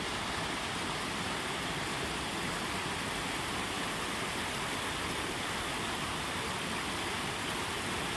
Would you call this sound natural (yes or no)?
yes